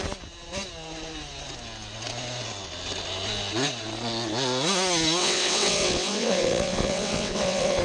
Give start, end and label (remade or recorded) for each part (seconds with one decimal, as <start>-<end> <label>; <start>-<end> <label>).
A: 0.0-5.2 recorded; 5.2-7.8 remade